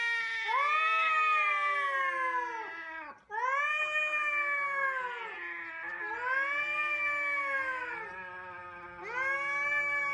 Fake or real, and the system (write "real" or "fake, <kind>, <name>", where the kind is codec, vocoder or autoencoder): real